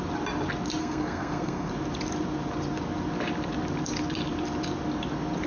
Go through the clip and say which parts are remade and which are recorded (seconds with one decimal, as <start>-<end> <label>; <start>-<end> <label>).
0.0-0.8 recorded; 0.8-1.7 remade; 1.7-5.5 recorded